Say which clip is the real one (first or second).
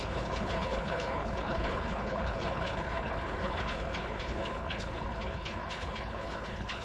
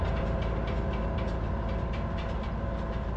second